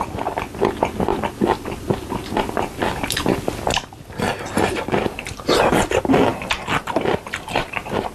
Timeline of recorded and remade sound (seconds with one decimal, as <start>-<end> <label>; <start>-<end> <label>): 0.0-8.1 recorded